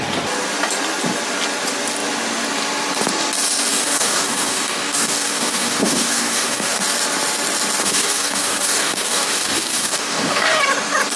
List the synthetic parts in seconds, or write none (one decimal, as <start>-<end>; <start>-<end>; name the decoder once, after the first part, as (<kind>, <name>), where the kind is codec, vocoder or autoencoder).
3.7-6.8 (codec, DAC); 7.8-10.6